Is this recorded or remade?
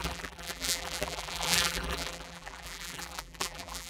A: remade